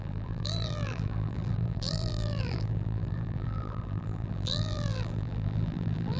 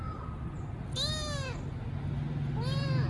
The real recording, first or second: second